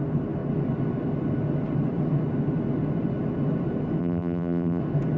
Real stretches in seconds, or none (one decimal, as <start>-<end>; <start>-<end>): 0.0-4.0; 4.8-5.2

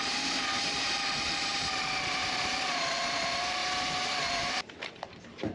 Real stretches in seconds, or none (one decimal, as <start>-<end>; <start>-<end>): 3.6-4.2

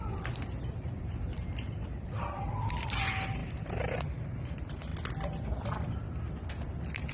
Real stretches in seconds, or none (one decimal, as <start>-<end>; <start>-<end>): 4.9-7.1